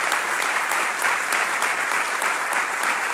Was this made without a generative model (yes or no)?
yes